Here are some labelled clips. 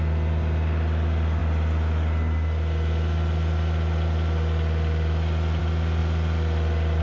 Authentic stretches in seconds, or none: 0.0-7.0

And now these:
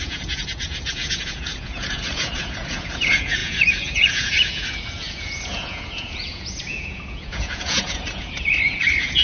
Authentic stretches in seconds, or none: none

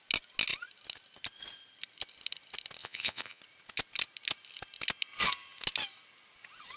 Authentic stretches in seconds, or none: 0.0-2.8; 3.4-6.8